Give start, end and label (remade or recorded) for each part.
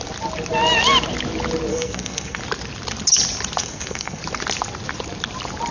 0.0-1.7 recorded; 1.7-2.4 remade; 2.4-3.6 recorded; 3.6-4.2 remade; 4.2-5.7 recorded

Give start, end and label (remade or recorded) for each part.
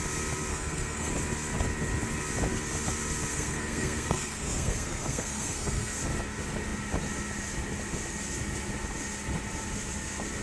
0.0-0.5 recorded; 0.5-1.1 remade; 1.1-3.3 recorded; 3.3-6.0 remade; 6.0-10.4 recorded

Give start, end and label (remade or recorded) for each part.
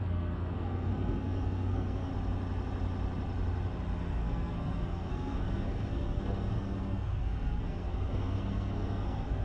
0.0-2.1 remade; 2.1-4.0 recorded; 4.0-9.4 remade